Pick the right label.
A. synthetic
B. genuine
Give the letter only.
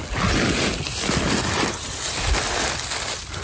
B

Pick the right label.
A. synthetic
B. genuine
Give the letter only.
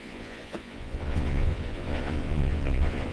A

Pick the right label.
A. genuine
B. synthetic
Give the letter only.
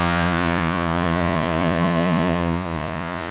B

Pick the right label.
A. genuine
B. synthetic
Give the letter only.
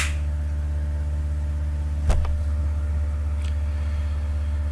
A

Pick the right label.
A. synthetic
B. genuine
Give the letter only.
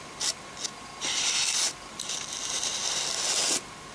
B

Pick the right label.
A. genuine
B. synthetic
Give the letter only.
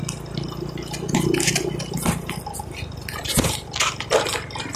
A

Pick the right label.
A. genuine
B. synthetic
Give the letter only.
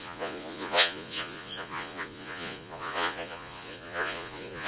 B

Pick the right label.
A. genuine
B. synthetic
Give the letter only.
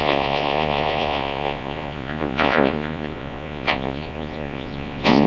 B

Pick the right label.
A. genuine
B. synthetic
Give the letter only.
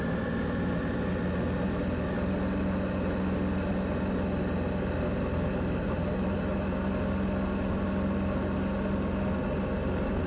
A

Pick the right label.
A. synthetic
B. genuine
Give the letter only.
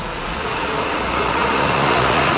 A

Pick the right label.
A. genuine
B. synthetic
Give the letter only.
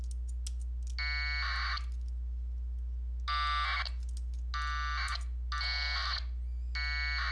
A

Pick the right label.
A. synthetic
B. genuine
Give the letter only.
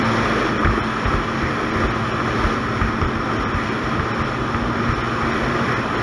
B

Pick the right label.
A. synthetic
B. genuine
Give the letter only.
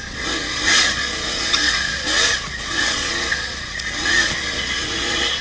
A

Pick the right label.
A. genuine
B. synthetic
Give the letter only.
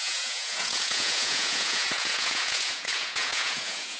B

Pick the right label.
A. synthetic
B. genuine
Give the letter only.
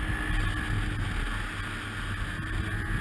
B